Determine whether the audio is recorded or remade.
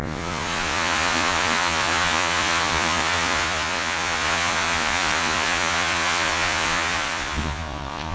remade